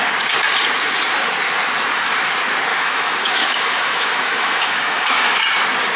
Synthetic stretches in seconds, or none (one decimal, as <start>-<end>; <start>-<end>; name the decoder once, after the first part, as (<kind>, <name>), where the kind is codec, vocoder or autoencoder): 2.7-5.4 (autoencoder, DAC-VAE)